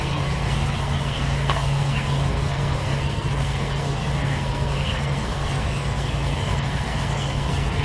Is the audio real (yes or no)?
no